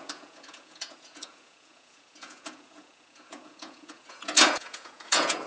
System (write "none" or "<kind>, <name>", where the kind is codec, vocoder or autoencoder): vocoder, Vocos